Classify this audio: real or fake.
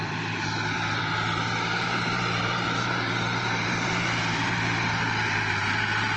fake